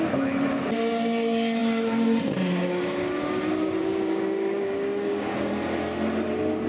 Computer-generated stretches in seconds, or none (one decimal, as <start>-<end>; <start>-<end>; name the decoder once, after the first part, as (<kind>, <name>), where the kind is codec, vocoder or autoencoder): 3.8-5.5 (codec, DAC)